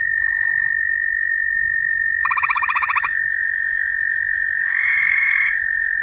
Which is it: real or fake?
fake